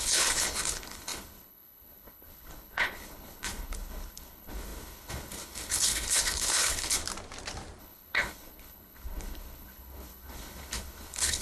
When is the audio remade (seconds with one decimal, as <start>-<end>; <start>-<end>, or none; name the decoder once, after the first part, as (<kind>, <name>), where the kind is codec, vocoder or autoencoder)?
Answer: 0.0-7.0 (codec, HILCodec); 7.8-11.4